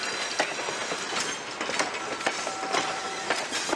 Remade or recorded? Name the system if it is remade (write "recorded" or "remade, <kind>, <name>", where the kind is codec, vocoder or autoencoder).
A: recorded